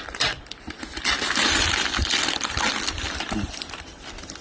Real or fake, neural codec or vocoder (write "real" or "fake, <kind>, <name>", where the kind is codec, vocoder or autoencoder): fake, vocoder, BigVGAN v2